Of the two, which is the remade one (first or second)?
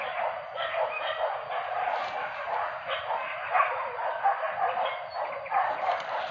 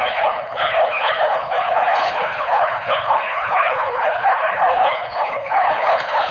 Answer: second